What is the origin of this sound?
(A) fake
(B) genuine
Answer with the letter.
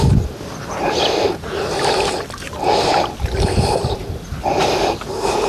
B